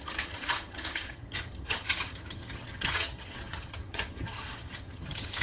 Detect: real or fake fake